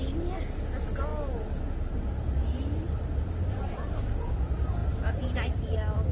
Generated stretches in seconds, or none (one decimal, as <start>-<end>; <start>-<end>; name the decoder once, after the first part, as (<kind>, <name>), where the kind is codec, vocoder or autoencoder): 2.4-4.0 (vocoder, BigVGAN v2); 4.8-6.1